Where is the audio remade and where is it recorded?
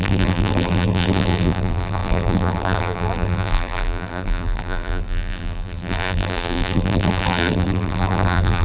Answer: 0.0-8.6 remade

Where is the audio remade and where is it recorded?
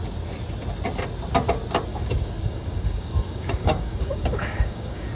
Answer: 0.0-1.9 recorded; 1.9-5.1 remade